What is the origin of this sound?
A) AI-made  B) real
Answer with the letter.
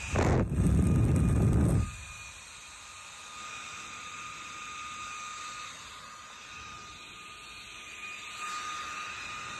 B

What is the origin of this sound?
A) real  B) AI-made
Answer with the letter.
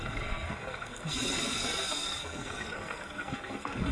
B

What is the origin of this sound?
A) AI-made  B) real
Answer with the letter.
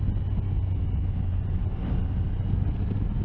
B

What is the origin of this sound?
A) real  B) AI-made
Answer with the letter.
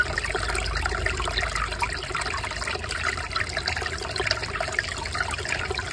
A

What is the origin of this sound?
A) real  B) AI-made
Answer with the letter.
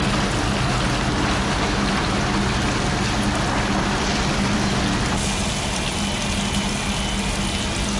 A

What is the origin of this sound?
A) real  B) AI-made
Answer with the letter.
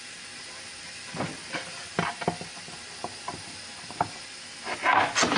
A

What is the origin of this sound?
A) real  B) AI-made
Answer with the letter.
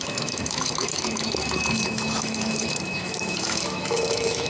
B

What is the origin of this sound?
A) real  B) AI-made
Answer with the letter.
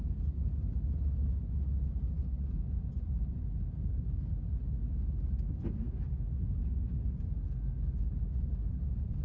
A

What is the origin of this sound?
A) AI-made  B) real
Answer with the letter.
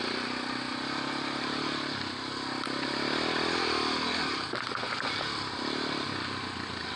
B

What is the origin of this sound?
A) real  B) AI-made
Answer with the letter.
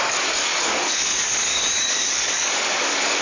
B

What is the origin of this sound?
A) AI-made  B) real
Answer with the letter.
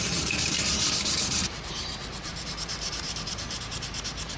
A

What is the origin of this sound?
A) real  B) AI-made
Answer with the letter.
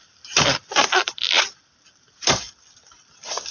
B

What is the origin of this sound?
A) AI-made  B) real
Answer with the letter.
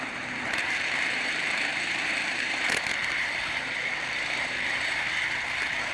A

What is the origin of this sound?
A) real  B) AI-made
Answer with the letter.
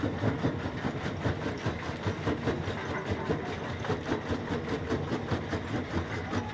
A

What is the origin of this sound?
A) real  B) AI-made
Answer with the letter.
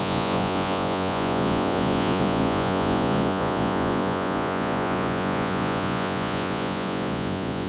B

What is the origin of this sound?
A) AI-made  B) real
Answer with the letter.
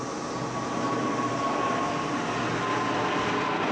B